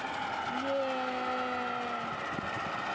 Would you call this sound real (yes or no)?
yes